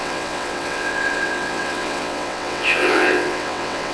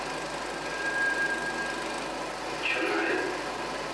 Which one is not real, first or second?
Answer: first